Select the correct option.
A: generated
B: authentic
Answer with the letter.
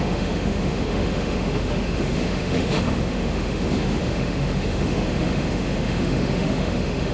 A